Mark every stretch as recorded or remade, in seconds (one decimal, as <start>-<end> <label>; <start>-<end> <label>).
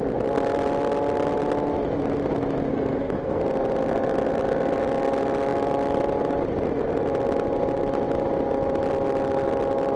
0.0-2.7 recorded; 2.7-3.4 remade; 3.4-10.0 recorded